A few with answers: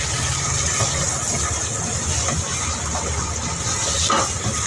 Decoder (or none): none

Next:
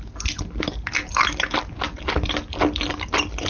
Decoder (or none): none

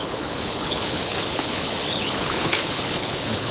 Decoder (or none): codec, HILCodec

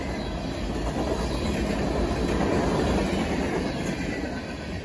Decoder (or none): none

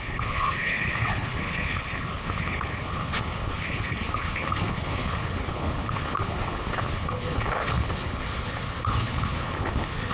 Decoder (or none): codec, HILCodec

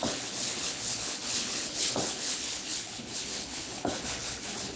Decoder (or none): codec, HILCodec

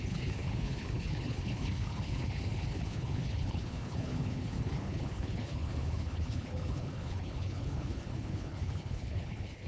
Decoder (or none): codec, HILCodec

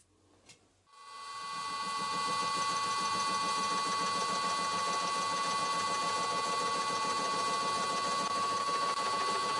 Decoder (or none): none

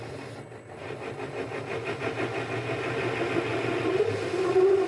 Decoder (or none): none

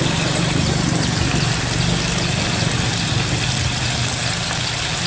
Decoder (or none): none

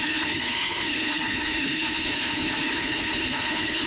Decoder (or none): codec, HILCodec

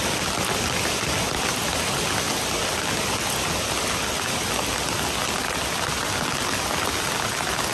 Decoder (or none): none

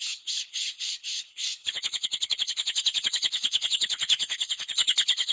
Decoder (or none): codec, HILCodec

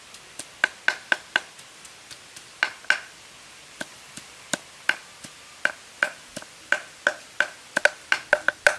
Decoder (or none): none